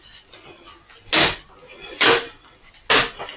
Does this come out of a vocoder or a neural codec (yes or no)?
no